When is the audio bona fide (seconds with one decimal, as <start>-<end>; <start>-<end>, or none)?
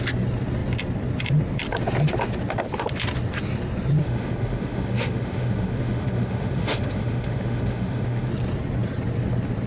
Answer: 0.0-4.0; 8.3-9.7